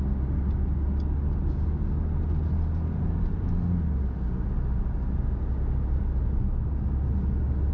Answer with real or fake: real